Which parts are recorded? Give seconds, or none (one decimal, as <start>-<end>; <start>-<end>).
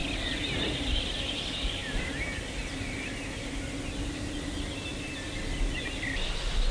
0.0-6.7